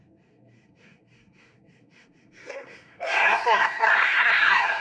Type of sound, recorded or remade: remade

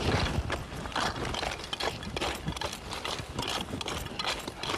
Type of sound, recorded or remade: recorded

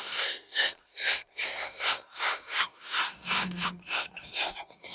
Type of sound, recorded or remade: remade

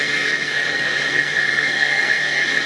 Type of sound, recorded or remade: remade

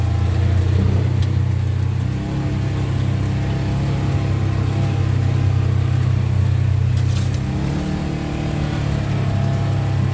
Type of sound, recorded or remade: recorded